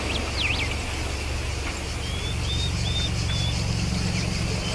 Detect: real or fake real